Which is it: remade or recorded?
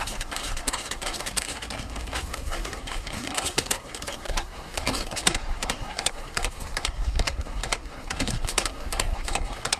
remade